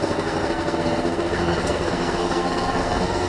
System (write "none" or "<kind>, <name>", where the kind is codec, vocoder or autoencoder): codec, SNAC